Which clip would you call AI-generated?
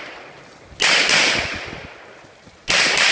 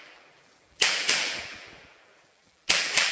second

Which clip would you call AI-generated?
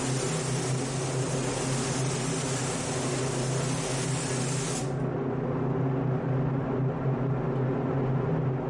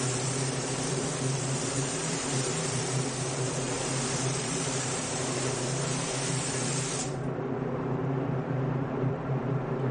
second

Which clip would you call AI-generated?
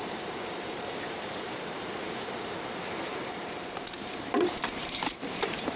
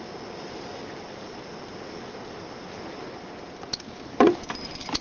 first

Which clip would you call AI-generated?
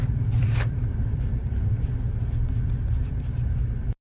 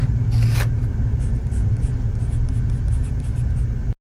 first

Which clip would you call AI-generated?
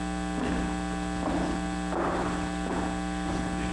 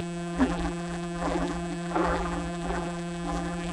second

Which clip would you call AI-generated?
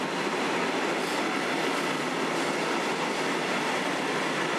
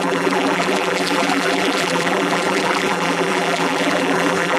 second